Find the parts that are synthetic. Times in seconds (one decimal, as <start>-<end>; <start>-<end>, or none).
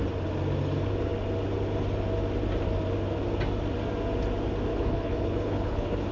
4.7-6.1